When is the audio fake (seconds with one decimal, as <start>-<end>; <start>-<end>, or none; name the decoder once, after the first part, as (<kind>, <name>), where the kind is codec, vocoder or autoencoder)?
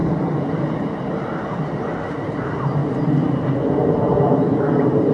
0.0-2.8 (vocoder, BigVGAN v2); 3.7-5.1